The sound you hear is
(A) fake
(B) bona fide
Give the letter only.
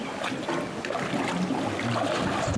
B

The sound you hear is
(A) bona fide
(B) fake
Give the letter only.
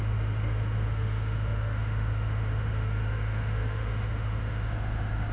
B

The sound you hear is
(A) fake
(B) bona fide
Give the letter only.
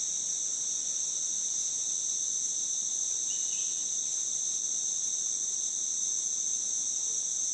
B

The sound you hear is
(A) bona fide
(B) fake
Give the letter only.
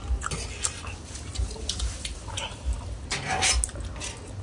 A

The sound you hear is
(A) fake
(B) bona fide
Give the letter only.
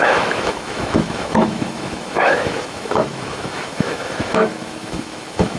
A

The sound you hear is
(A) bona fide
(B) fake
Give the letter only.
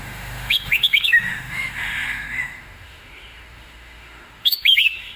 B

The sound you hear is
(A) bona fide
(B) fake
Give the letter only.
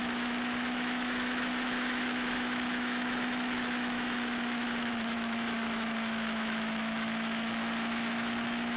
B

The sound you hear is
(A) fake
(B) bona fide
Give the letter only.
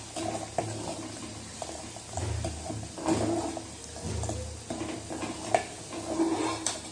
B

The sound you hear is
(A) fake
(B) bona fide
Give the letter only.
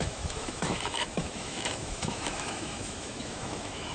A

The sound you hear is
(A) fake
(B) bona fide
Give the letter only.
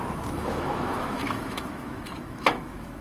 A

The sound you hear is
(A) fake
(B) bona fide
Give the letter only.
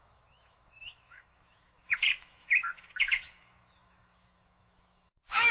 A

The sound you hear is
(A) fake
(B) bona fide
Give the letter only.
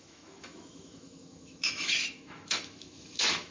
A